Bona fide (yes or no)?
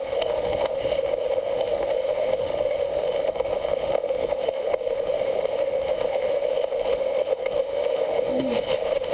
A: no